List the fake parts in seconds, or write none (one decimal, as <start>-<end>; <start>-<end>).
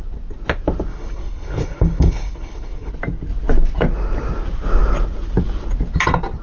0.9-2.9